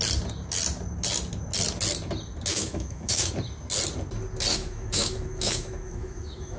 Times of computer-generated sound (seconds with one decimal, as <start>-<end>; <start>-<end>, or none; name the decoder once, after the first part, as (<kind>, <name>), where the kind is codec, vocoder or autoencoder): 2.5-3.3 (autoencoder, DAC-VAE); 4.5-6.6